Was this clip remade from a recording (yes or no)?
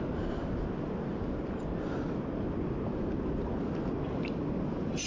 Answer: no